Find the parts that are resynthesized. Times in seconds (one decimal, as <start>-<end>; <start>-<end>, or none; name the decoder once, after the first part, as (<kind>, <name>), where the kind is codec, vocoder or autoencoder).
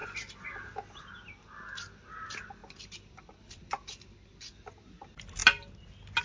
none